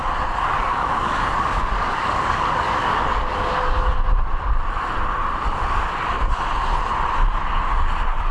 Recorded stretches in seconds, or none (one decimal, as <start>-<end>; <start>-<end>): 0.0-0.6; 3.9-8.3